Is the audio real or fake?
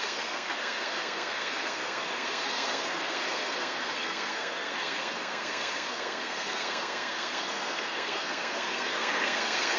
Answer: fake